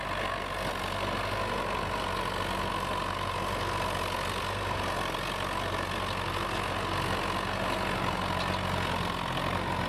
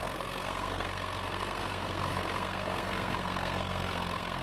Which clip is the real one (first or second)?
first